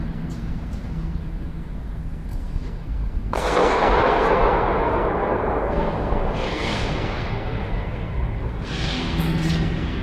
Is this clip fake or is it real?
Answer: fake